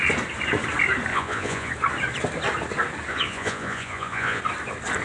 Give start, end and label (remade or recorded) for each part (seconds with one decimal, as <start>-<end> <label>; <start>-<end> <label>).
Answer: 0.0-1.1 recorded; 1.1-1.7 remade; 1.7-3.1 recorded; 3.1-4.4 remade; 4.4-5.0 recorded